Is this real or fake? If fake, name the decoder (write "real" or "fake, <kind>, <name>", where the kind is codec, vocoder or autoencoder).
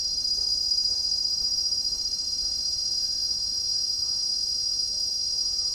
fake, vocoder, Vocos